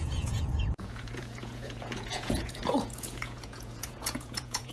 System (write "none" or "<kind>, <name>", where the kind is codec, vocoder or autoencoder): vocoder, Vocos